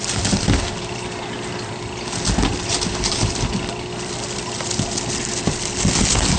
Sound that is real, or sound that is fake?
real